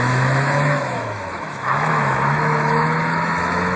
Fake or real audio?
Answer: fake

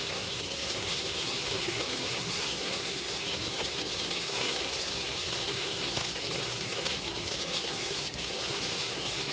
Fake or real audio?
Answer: fake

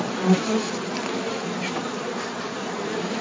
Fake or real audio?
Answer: fake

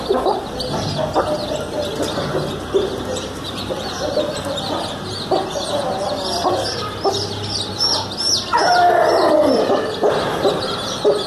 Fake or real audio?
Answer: fake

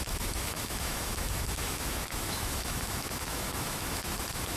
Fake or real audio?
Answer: fake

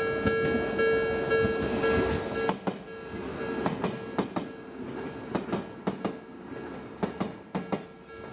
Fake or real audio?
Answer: real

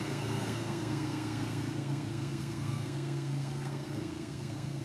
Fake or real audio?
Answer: fake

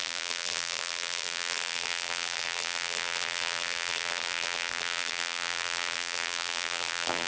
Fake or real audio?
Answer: fake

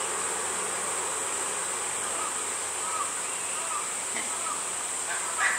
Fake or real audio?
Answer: real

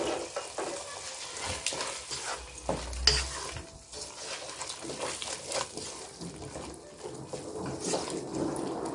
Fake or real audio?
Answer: real